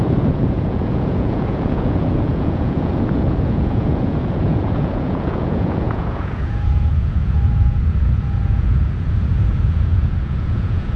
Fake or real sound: fake